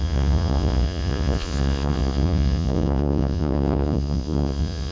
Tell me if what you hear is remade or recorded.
remade